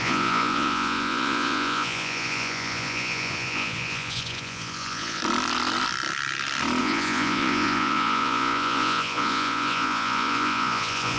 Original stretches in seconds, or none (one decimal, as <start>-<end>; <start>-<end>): 5.2-6.8